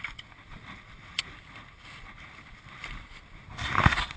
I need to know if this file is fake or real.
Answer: real